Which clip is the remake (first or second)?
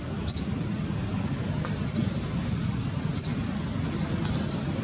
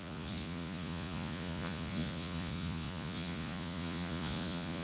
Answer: second